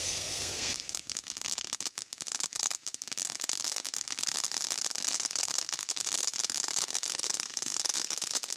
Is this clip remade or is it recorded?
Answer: remade